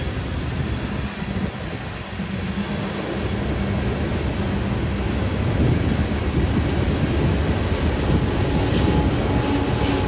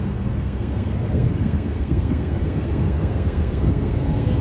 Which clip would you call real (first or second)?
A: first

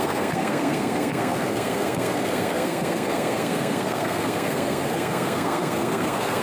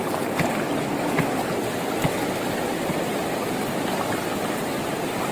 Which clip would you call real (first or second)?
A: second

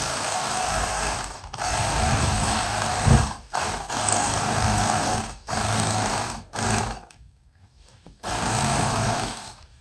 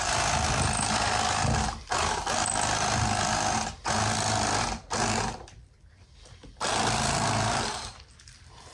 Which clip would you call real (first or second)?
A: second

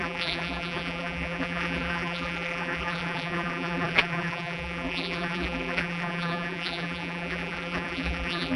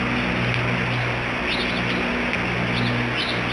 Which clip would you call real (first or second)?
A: second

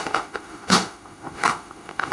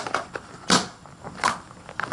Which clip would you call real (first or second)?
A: second